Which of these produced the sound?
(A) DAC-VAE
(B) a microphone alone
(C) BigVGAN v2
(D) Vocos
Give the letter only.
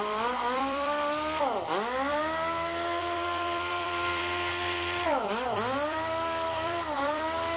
C